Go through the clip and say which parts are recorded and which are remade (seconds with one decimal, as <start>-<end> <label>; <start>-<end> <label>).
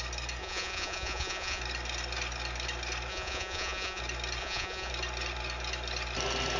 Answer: 0.0-0.4 recorded; 0.4-1.6 remade; 1.6-3.1 recorded; 3.1-4.0 remade; 4.0-4.4 recorded; 4.4-4.9 remade; 4.9-6.6 recorded